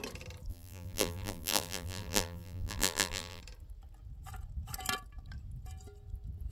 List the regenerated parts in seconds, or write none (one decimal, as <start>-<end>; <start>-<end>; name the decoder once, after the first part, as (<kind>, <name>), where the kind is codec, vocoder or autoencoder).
0.5-3.4 (vocoder, BigVGAN v2)